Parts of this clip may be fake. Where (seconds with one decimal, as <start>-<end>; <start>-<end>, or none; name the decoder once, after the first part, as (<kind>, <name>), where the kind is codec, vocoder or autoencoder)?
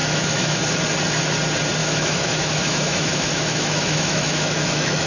0.0-0.6 (autoencoder, DAC-VAE); 1.8-5.1